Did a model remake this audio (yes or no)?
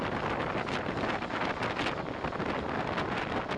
no